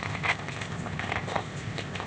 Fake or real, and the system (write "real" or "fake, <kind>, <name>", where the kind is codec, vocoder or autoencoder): fake, codec, ZipCodec